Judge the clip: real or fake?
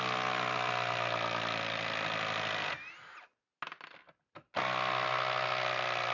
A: real